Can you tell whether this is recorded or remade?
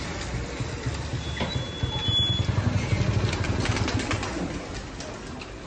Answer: recorded